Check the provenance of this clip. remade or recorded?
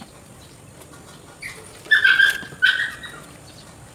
remade